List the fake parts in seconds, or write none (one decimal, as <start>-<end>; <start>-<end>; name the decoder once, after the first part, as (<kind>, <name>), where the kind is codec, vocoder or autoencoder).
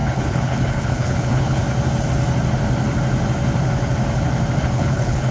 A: 0.0-1.6 (codec, HILCodec); 4.6-5.3